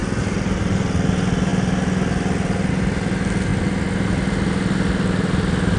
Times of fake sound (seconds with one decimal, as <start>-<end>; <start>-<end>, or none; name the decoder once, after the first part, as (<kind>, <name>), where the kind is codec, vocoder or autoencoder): none